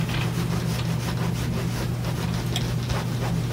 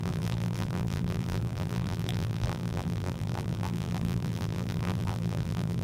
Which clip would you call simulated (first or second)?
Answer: second